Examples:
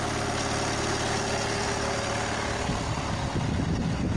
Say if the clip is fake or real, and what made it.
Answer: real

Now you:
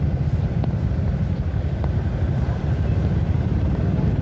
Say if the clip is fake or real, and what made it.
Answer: real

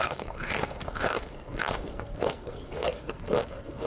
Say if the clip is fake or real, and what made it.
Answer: fake, codec, SNAC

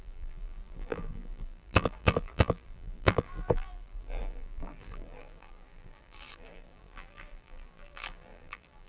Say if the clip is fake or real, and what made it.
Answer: fake, vocoder, BigVGAN v2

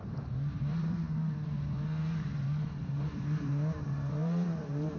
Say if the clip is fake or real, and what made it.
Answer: fake, vocoder, BigVGAN v2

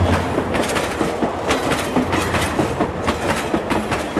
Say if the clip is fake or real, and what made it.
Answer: real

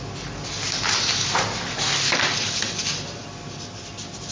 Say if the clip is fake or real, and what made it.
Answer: real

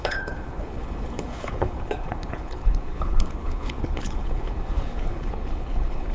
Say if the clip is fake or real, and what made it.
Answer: fake, codec, HILCodec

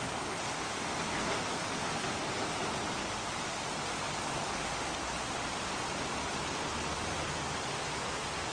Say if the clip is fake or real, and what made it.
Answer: real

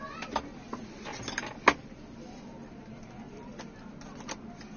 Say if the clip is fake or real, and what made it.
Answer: real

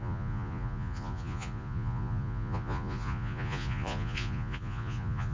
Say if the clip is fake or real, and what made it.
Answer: fake, vocoder, Vocos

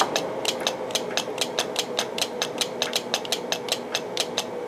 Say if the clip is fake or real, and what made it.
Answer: real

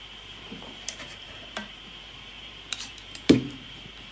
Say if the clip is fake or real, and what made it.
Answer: fake, vocoder, BigVGAN v2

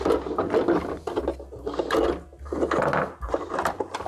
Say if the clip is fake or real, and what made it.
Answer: real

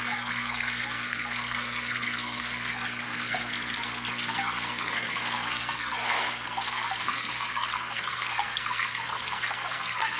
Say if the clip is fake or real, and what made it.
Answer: fake, codec, SNAC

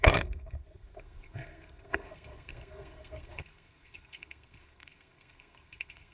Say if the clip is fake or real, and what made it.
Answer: fake, codec, SNAC